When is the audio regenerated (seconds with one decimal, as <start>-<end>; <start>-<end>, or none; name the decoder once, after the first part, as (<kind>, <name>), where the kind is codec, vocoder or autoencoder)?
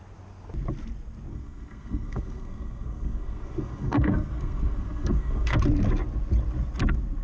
1.3-5.6 (codec, SNAC)